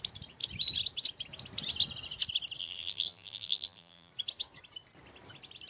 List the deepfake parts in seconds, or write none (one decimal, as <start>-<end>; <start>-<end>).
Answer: 2.6-4.1